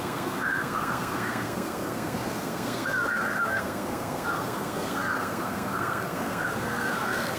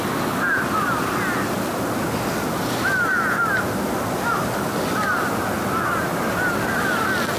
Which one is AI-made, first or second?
first